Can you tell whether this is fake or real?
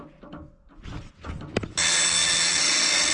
real